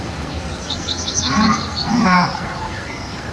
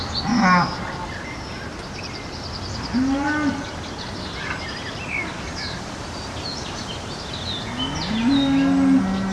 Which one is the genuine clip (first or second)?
second